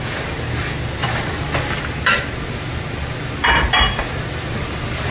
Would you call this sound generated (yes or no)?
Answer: no